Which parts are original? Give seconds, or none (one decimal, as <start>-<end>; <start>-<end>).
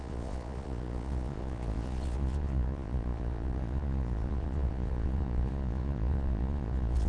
none